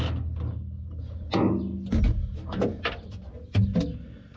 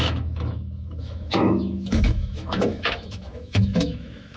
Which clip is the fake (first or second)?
second